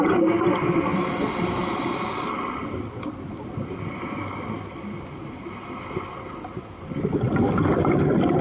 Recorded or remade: recorded